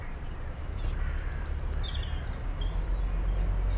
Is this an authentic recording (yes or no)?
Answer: yes